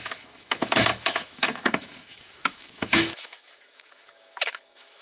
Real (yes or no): no